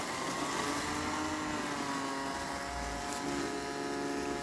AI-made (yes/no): no